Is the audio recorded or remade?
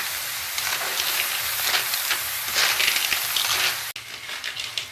recorded